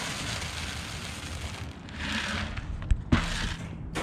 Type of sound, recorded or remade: recorded